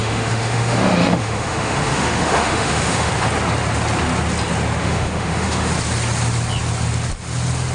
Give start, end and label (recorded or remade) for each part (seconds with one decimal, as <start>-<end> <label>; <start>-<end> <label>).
0.0-3.1 remade; 3.1-4.8 recorded; 4.8-5.7 remade; 5.7-7.7 recorded